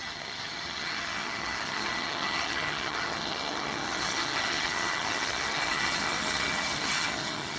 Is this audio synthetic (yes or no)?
yes